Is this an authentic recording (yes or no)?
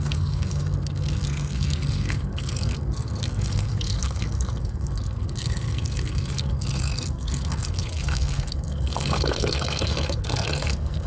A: no